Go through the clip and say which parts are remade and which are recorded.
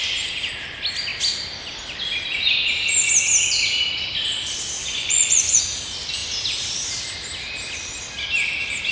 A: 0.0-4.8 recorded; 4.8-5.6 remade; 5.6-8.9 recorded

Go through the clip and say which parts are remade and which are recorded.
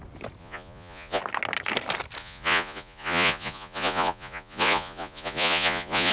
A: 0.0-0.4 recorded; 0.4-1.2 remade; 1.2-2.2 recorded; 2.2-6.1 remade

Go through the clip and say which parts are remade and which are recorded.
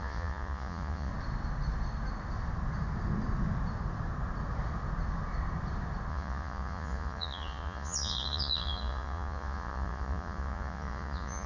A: 0.0-1.1 remade; 1.1-6.1 recorded; 6.1-11.5 remade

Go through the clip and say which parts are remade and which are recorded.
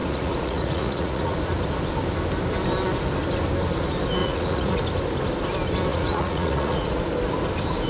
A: 0.0-1.4 remade; 1.4-4.2 recorded; 4.2-4.8 remade; 4.8-5.9 recorded; 5.9-7.0 remade; 7.0-7.9 recorded